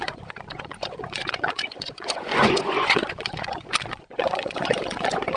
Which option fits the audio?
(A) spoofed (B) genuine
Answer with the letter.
A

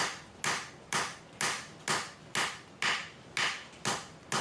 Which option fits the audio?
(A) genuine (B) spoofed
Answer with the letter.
A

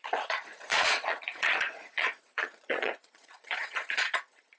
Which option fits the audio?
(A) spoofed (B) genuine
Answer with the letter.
A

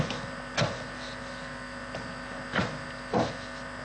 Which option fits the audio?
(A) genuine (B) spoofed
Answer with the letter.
A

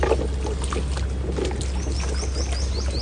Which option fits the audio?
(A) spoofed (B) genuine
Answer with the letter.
B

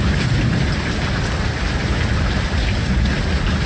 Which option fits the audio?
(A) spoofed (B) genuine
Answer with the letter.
B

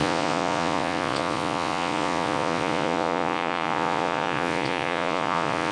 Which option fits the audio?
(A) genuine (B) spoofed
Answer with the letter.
B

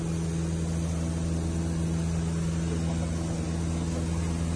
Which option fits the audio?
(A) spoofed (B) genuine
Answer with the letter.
B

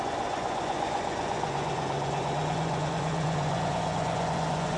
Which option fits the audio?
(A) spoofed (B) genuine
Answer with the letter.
A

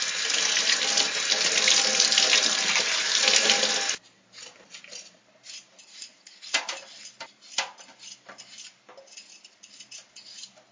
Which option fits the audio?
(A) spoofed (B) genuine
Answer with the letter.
B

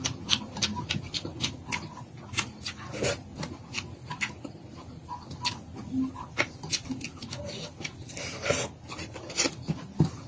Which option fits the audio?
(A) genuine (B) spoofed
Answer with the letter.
A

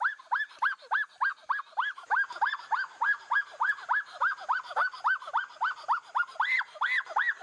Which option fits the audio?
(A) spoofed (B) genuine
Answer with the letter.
B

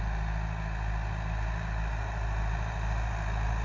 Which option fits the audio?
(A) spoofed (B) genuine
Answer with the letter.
B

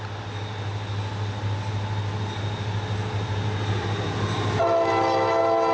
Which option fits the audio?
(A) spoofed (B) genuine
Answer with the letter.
B